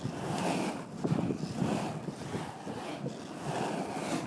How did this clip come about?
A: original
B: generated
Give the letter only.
A